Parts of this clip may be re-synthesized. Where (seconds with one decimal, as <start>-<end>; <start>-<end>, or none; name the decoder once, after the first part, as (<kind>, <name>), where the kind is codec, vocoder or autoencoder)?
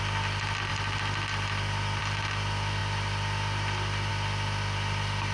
none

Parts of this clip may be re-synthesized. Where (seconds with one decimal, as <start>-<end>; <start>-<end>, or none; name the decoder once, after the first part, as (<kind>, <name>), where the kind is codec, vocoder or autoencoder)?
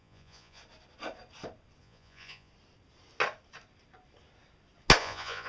0.0-0.6 (vocoder, Vocos); 1.8-2.5; 5.0-5.5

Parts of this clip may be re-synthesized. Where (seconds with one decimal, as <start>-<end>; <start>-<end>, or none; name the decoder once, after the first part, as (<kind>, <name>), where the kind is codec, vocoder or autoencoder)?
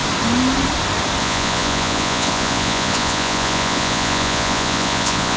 1.2-5.4 (vocoder, Vocos)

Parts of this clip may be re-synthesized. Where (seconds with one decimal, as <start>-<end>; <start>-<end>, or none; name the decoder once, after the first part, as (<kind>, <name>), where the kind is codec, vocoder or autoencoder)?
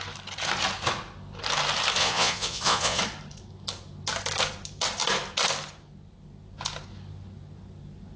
2.0-3.0 (vocoder, Vocos)